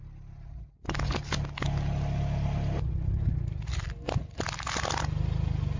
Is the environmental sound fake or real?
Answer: real